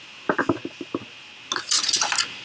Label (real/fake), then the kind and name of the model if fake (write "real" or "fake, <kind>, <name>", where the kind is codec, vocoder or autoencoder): real